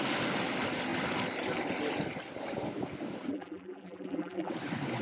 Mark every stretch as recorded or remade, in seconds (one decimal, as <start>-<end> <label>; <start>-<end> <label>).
0.0-3.3 recorded; 3.3-4.5 remade; 4.5-5.0 recorded